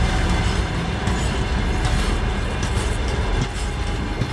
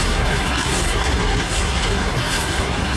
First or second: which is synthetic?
second